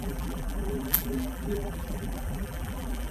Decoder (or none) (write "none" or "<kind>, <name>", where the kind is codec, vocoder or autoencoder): vocoder, BigVGAN v2